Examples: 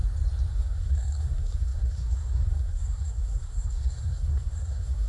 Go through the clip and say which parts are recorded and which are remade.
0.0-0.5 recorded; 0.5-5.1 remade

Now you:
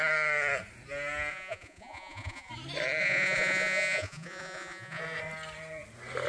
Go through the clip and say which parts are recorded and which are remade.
0.0-1.3 recorded; 1.3-2.5 remade; 2.5-3.0 recorded; 3.0-5.0 remade; 5.0-6.3 recorded

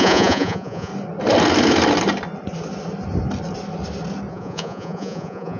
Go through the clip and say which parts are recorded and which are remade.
0.0-0.9 remade; 0.9-4.3 recorded; 4.3-5.6 remade

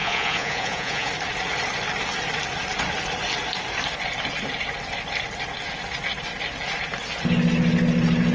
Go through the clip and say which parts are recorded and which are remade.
0.0-1.1 remade; 1.1-8.3 recorded

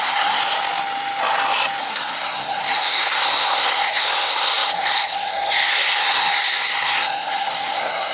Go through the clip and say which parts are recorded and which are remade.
0.0-0.4 remade; 0.4-1.8 recorded; 1.8-8.1 remade